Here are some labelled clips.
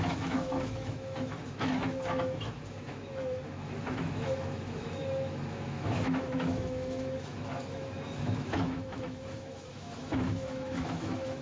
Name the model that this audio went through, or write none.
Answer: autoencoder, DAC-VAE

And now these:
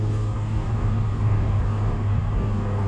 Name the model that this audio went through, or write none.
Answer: codec, DAC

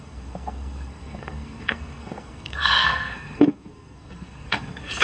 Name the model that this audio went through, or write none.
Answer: codec, SNAC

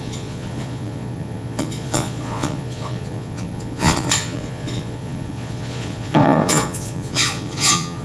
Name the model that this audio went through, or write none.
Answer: vocoder, Vocos